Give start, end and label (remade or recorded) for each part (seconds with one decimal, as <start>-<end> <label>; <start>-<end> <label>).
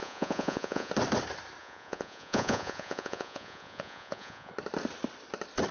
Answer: 0.0-0.9 remade; 0.9-1.6 recorded; 1.6-4.5 remade; 4.5-5.7 recorded